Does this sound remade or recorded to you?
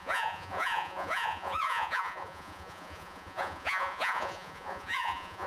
remade